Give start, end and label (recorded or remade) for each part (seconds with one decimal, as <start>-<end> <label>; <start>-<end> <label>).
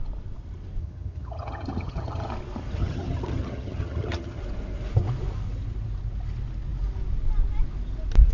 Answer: 0.0-0.8 recorded; 0.8-2.3 remade; 2.3-2.8 recorded; 2.8-4.4 remade; 4.4-8.3 recorded